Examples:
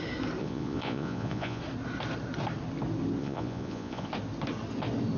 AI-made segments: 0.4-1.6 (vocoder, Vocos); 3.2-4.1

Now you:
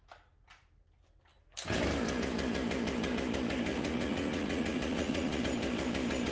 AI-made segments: 3.7-5.4 (vocoder, Vocos)

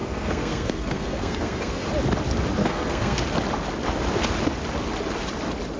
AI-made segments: 0.0-1.9 (codec, SNAC); 2.6-3.2

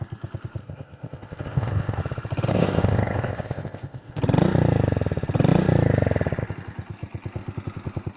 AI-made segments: 0.6-2.0 (codec, ZipCodec); 2.5-4.2

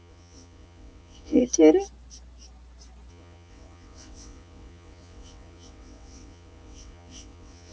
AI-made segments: 0.0-1.4 (vocoder, WaveNeXt); 3.1-7.7